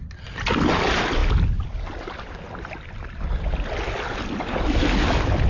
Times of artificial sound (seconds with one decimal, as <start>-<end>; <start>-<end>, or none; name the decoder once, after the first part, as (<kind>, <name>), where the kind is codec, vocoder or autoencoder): none